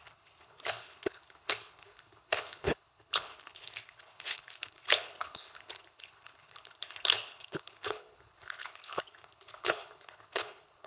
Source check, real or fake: fake